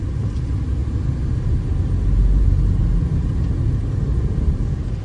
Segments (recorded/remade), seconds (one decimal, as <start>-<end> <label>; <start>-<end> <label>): 0.0-0.8 remade; 0.8-2.4 recorded; 2.4-5.0 remade